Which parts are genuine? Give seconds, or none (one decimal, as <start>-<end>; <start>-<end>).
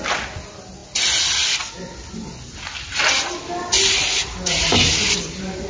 0.0-5.7